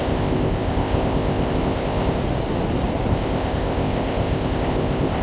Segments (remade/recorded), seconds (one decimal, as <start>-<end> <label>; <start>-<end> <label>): 0.0-2.2 remade; 2.2-3.1 recorded; 3.1-5.2 remade